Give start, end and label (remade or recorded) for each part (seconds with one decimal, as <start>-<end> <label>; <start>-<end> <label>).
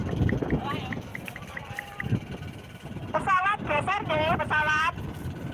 0.0-0.7 recorded; 0.7-5.5 remade